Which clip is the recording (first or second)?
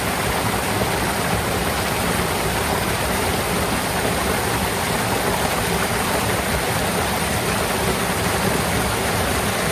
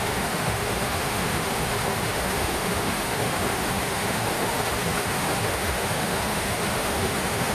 first